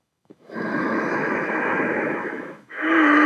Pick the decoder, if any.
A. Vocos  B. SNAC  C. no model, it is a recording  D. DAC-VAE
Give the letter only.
D